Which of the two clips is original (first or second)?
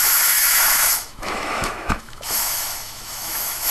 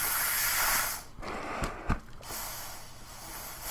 second